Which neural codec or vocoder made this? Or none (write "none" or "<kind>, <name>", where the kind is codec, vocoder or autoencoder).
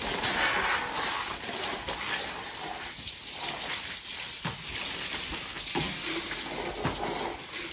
none